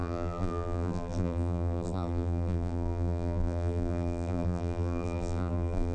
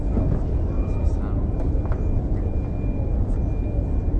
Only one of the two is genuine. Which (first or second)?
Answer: second